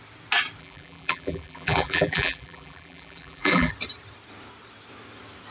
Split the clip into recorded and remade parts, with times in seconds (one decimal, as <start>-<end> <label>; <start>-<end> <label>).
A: 0.0-0.6 recorded; 0.6-3.7 remade; 3.7-5.5 recorded